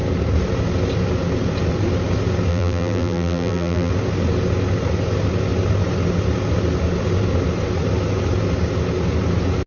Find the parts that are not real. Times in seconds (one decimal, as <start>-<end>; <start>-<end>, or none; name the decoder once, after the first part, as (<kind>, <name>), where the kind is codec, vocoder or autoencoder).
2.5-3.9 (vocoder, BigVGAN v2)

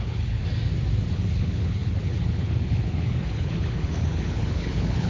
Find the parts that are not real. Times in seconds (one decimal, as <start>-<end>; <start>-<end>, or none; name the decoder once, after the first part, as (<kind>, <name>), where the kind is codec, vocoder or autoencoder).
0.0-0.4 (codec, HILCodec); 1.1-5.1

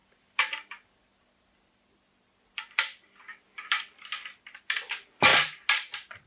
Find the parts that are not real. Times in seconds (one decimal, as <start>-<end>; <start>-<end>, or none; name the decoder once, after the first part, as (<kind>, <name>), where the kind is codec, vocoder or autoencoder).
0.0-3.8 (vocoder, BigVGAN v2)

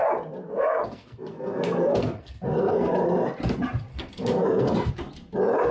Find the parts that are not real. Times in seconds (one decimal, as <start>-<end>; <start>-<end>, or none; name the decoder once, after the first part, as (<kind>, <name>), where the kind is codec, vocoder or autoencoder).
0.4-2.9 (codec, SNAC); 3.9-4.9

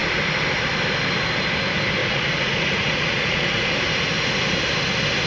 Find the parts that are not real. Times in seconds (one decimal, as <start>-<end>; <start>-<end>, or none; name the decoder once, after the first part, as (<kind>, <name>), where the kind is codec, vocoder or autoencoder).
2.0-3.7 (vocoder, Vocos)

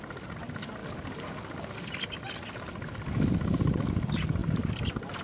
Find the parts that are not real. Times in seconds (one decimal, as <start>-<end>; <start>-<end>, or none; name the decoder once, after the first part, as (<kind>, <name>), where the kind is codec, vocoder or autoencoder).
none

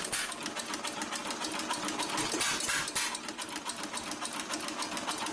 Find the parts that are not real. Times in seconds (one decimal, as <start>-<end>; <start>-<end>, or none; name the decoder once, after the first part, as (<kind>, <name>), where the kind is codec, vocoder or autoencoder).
none